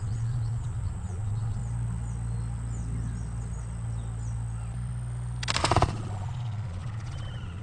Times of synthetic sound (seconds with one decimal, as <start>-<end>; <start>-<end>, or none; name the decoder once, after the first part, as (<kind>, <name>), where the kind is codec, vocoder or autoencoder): 0.0-1.6 (vocoder, Vocos); 5.6-7.6